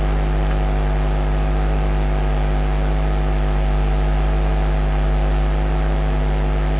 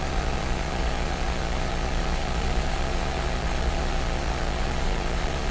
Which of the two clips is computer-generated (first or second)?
second